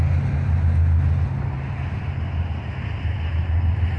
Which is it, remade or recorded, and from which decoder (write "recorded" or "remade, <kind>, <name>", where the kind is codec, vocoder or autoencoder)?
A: recorded